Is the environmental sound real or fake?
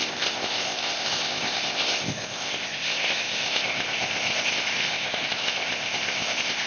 fake